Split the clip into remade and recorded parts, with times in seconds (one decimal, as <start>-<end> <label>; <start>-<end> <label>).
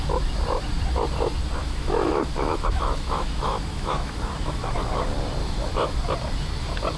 0.0-1.6 recorded; 1.6-4.8 remade; 4.8-5.4 recorded; 5.4-6.0 remade; 6.0-7.0 recorded